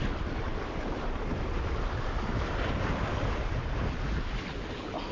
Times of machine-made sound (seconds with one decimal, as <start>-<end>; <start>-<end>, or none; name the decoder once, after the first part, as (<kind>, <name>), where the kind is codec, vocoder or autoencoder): none